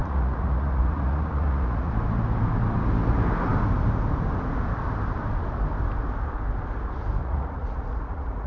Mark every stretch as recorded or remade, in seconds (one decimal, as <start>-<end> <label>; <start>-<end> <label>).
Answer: 0.0-1.9 remade; 1.9-7.2 recorded; 7.2-8.5 remade